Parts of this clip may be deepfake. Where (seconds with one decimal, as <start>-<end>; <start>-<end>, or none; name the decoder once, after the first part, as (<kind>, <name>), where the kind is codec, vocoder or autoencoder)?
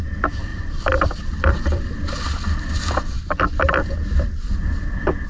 0.5-3.7 (vocoder, BigVGAN v2)